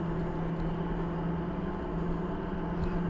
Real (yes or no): yes